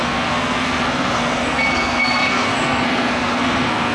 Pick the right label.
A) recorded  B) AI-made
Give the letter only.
B